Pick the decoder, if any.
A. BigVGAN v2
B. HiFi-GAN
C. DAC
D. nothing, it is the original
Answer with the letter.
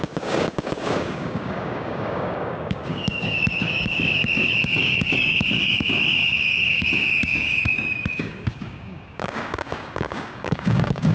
C